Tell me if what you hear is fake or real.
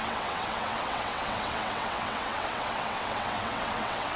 fake